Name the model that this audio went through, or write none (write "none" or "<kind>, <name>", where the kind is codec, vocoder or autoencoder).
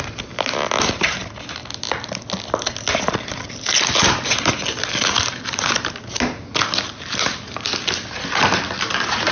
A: none